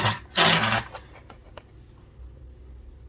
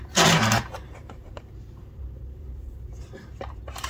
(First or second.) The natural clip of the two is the first